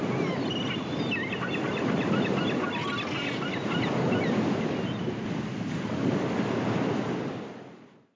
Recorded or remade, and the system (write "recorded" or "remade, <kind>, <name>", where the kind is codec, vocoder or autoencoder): recorded